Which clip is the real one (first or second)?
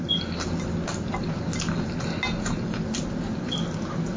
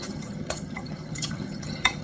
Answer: first